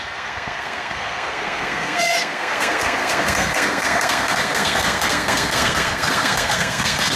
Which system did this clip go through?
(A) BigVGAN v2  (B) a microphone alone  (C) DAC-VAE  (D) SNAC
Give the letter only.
D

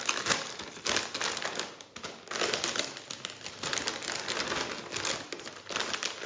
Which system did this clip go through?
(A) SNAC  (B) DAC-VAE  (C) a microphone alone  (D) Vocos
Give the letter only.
C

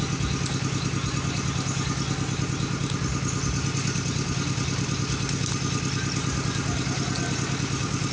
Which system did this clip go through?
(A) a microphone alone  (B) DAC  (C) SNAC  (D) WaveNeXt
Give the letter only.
A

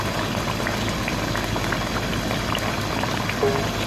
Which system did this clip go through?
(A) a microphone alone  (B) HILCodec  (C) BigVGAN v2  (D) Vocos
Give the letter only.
A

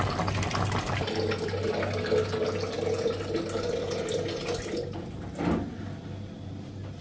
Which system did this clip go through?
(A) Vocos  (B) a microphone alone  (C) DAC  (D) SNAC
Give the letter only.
B